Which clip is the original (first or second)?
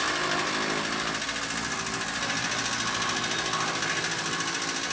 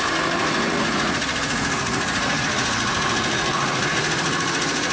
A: first